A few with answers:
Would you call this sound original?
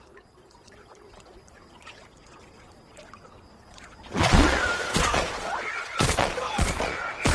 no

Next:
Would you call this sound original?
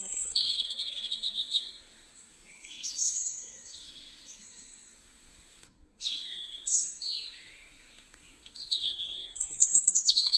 no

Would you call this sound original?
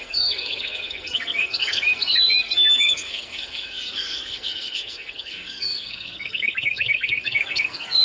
no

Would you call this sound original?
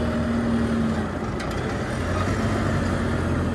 yes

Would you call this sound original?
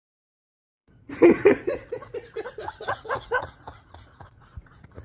no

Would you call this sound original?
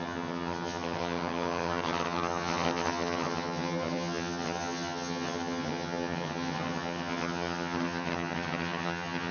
no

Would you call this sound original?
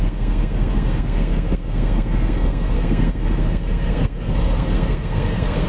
no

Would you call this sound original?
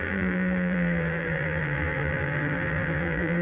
no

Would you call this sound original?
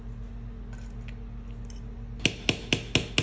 yes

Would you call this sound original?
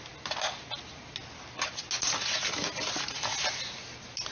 yes